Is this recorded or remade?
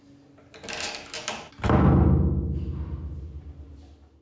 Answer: recorded